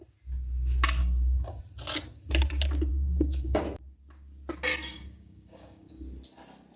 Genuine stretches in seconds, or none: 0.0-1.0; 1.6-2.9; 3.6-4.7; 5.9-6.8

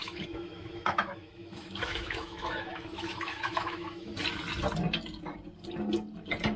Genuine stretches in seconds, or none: 4.1-6.6

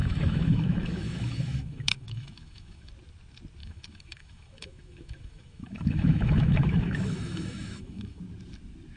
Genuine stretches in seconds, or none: 2.9-3.6; 8.2-9.0

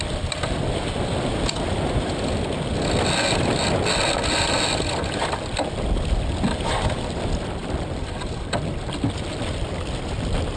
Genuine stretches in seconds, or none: 0.0-10.6

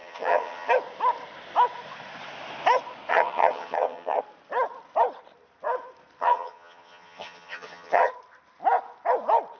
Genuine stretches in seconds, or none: 0.7-3.1; 4.2-6.2; 8.1-9.6

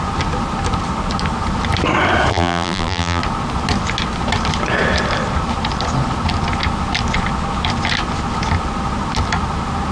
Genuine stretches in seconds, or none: 0.0-2.3; 3.2-9.9

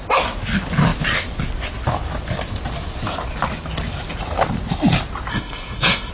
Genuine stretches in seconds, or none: 0.0-5.3